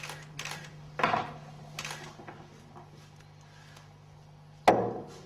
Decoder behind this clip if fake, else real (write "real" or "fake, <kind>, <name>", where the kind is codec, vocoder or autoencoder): real